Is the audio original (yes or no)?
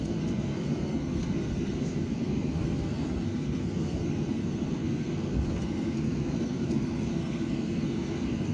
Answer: no